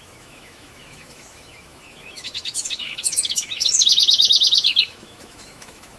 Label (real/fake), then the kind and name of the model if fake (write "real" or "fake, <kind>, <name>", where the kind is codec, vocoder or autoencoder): fake, autoencoder, DAC-VAE